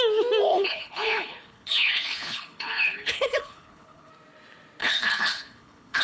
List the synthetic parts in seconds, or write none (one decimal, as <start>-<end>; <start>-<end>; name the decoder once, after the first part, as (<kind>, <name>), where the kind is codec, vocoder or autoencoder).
0.5-4.1 (codec, HILCodec); 4.8-6.0